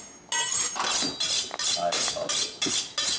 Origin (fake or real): real